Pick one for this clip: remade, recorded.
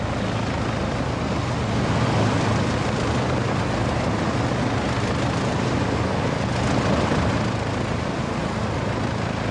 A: recorded